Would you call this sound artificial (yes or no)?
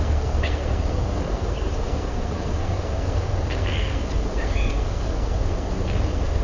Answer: yes